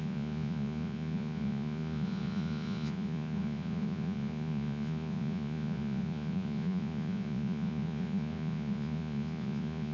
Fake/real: fake